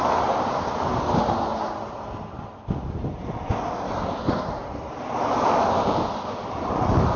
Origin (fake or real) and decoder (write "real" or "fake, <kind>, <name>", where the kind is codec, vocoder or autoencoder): real